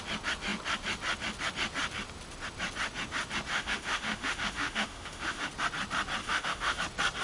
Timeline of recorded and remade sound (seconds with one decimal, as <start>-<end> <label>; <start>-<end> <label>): 0.0-3.5 recorded; 3.5-5.5 remade; 5.5-6.2 recorded; 6.2-6.8 remade; 6.8-7.2 recorded